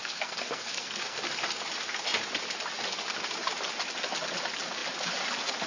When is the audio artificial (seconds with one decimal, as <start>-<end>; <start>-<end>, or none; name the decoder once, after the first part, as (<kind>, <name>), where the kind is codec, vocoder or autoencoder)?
0.0-1.2 (codec, SNAC)

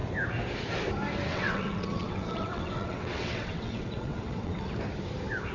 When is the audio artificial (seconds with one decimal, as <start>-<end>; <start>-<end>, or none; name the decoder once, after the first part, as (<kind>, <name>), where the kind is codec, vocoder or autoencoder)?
1.3-4.6 (vocoder, WaveNeXt)

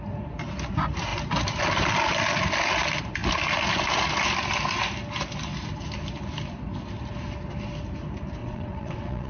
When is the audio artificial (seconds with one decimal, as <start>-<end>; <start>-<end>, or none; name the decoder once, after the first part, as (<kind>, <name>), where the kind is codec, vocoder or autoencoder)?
8.4-9.3 (vocoder, WaveNeXt)

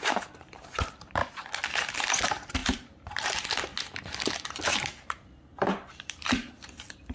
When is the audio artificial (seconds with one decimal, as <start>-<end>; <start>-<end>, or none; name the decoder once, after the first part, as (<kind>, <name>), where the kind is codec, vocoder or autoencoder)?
0.0-1.2 (vocoder, BigVGAN v2); 1.7-3.7; 4.5-7.1